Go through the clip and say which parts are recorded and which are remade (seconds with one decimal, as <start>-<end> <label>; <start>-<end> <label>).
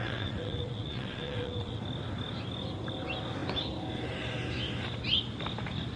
0.0-1.8 remade; 1.8-6.0 recorded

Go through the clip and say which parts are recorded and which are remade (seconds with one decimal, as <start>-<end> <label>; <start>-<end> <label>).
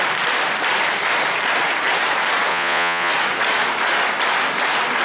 0.0-2.5 recorded; 2.5-3.1 remade; 3.1-5.0 recorded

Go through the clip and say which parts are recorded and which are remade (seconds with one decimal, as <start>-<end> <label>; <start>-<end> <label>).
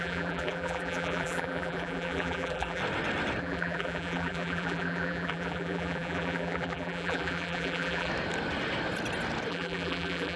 0.0-2.8 remade; 2.8-3.4 recorded; 3.4-8.1 remade; 8.1-9.5 recorded; 9.5-10.4 remade